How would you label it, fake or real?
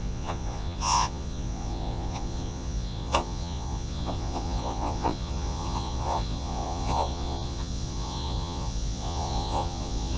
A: fake